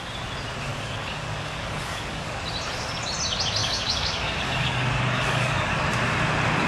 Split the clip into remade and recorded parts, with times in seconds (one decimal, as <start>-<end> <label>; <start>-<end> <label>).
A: 0.0-0.7 recorded; 0.7-2.4 remade; 2.4-3.6 recorded; 3.6-5.8 remade; 5.8-6.7 recorded